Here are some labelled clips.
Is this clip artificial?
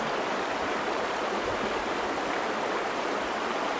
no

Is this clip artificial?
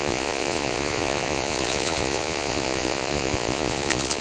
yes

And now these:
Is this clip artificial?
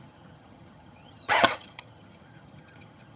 yes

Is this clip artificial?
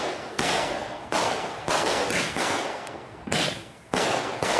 yes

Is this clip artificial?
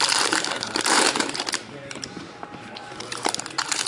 yes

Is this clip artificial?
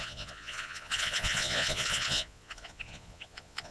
yes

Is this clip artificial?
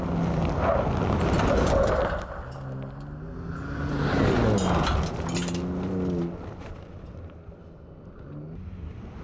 no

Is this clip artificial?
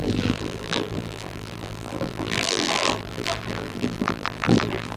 yes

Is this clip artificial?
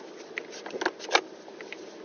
no